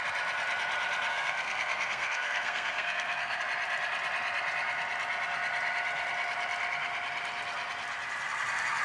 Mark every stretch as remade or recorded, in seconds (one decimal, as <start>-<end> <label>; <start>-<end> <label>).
0.0-1.1 recorded; 1.1-3.4 remade; 3.4-8.8 recorded